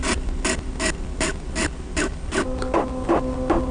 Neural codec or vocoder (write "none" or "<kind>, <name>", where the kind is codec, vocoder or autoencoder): none